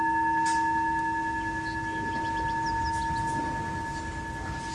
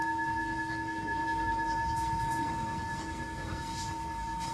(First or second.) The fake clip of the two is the second